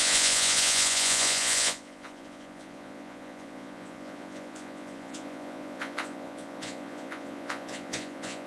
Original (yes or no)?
no